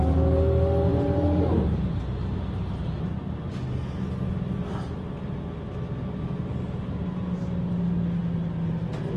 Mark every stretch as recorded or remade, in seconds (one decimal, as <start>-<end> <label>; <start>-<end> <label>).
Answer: 0.0-0.9 recorded; 0.9-1.8 remade; 1.8-9.2 recorded